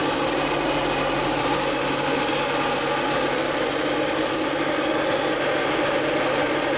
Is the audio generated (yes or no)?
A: no